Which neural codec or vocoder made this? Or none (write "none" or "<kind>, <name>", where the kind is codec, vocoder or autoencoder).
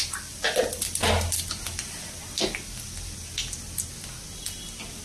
none